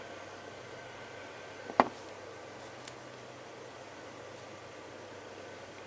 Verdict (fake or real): real